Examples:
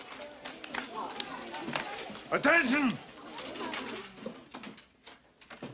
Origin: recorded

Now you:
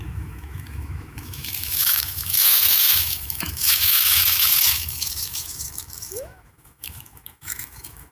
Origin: remade